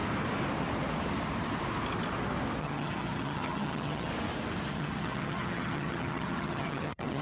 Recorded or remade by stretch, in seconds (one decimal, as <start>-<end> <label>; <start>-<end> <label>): 0.0-2.6 recorded; 2.6-4.1 remade; 4.1-4.7 recorded; 4.7-7.2 remade